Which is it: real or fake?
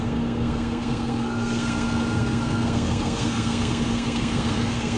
fake